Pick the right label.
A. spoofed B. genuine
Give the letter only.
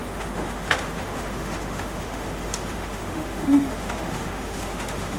A